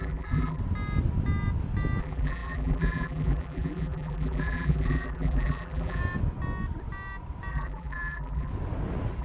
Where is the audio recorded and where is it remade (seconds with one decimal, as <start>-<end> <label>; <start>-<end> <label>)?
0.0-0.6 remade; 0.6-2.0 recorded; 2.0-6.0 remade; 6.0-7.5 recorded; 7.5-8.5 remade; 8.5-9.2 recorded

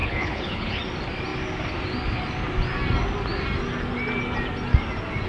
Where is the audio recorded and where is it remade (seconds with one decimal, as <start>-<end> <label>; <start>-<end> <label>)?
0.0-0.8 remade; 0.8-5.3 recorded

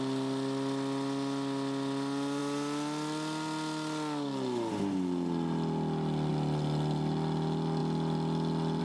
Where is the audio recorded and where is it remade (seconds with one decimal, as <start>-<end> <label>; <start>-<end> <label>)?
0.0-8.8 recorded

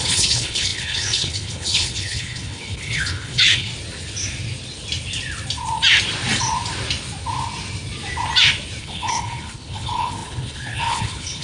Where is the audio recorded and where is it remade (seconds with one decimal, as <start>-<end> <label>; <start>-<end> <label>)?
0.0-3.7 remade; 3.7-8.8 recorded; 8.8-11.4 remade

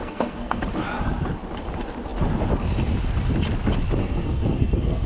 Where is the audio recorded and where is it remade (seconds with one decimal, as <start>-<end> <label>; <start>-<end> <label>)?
0.0-0.6 remade; 0.6-4.0 recorded; 4.0-5.1 remade

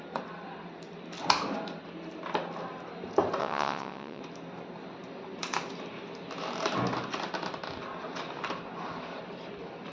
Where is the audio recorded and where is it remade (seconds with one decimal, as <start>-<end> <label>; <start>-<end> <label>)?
0.0-3.4 recorded; 3.4-4.2 remade; 4.2-9.9 recorded

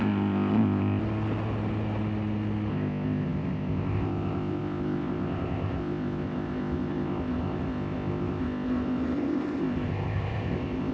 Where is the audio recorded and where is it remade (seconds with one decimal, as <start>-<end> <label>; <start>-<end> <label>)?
0.0-1.0 remade; 1.0-2.7 recorded; 2.7-10.9 remade

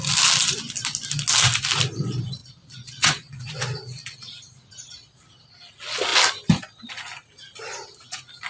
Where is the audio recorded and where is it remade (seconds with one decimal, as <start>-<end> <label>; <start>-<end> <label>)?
0.0-2.4 recorded; 2.4-3.5 remade; 3.5-8.5 recorded